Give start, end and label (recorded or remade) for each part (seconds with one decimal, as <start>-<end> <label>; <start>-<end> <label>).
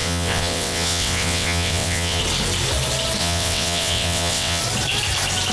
0.0-2.2 remade; 2.2-3.2 recorded; 3.2-4.6 remade; 4.6-5.5 recorded